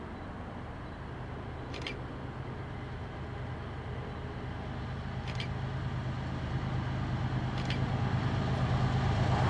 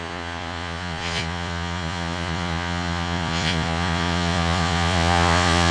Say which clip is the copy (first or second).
second